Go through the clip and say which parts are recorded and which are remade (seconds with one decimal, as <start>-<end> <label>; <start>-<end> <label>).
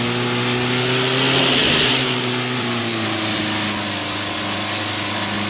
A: 0.0-1.6 recorded; 1.6-3.4 remade; 3.4-5.5 recorded